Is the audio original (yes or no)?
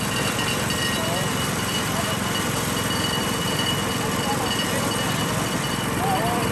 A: no